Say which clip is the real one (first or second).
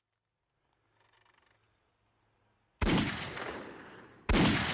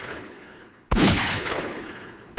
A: first